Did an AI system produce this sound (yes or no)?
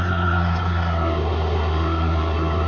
yes